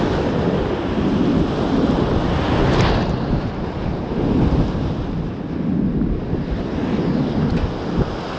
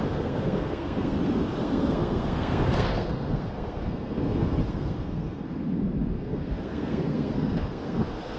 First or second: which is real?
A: first